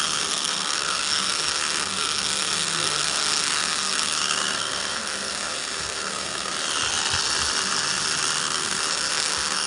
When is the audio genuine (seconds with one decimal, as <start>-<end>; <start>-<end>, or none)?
6.5-8.4